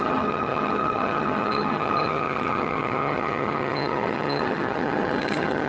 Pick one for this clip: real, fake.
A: fake